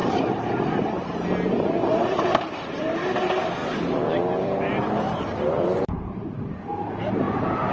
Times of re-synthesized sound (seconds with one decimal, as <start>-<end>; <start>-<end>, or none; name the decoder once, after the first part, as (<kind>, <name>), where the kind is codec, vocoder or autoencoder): 1.9-7.7 (vocoder, BigVGAN v2)